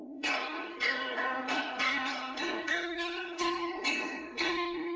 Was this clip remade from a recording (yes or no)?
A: yes